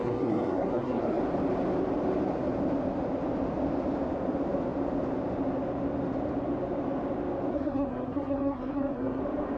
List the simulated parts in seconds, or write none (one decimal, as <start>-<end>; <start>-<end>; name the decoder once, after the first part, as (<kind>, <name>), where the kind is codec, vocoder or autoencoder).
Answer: 0.0-1.2 (codec, SNAC); 7.5-9.2